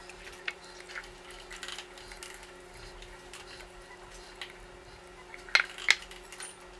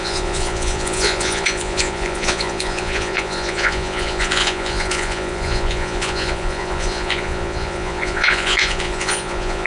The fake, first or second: second